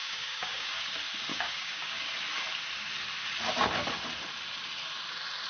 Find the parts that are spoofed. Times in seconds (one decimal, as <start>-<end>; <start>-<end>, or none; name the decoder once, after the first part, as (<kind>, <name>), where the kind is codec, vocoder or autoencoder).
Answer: 0.0-0.7 (codec, DAC); 1.3-2.0